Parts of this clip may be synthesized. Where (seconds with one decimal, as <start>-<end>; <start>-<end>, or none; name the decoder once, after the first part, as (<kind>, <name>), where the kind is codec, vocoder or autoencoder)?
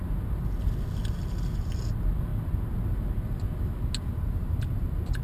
none